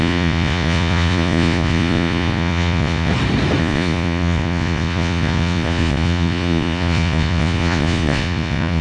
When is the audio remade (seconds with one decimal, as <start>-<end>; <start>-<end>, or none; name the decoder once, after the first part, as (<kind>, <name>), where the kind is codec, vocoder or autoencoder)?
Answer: 0.0-3.1 (vocoder, Vocos); 3.6-8.8